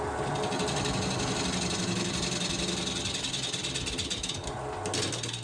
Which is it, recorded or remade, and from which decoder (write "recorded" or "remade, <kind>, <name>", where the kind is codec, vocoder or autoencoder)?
recorded